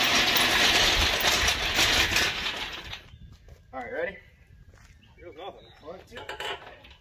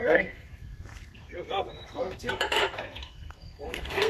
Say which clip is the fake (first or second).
second